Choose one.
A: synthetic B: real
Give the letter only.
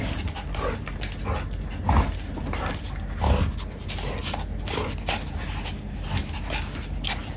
B